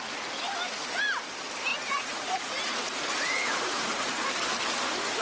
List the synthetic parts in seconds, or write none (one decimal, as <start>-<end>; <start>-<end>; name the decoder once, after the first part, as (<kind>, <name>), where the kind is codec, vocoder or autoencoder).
1.7-4.3 (vocoder, Vocos)